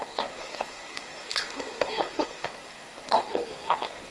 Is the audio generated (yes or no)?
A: yes